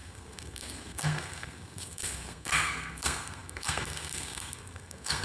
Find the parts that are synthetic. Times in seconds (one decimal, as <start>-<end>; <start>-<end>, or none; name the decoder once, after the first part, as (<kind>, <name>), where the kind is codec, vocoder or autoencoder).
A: 0.0-5.2 (codec, SNAC)